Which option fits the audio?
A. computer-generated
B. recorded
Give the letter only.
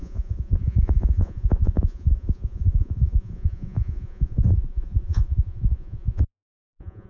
A